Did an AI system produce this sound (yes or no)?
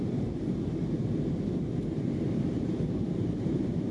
yes